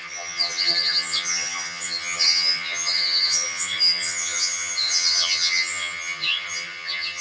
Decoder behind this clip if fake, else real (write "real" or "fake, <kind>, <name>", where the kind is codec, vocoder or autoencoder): fake, vocoder, HiFi-GAN